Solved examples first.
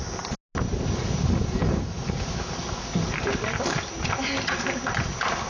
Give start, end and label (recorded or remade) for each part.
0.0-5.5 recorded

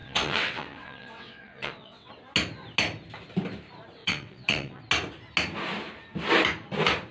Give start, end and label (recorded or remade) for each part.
0.0-2.1 remade; 2.1-4.0 recorded; 4.0-4.8 remade; 4.8-7.1 recorded

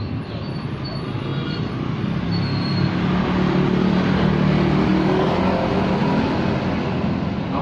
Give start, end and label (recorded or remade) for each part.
0.0-7.6 recorded

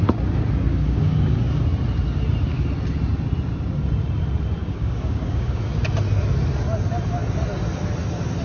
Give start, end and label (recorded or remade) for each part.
0.0-0.7 recorded; 0.7-1.4 remade; 1.4-4.6 recorded; 4.6-5.6 remade; 5.6-8.4 recorded

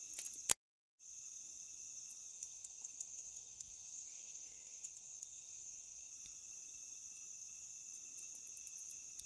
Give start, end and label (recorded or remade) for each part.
0.0-2.3 recorded; 2.3-6.1 remade; 6.1-9.3 recorded